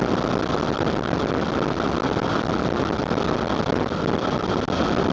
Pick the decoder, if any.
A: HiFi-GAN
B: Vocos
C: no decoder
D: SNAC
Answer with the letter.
C